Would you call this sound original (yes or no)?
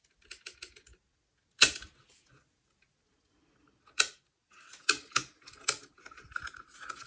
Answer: yes